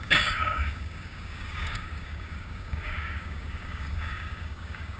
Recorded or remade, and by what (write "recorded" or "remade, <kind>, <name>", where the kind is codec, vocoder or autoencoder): remade, codec, DAC